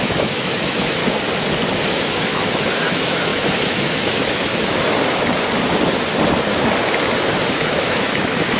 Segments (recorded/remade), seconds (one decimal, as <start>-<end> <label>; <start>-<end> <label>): 0.0-1.0 remade; 1.0-1.9 recorded; 1.9-4.5 remade; 4.5-7.5 recorded; 7.5-8.6 remade